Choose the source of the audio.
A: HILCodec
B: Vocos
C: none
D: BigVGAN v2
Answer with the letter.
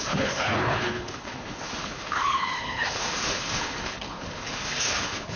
A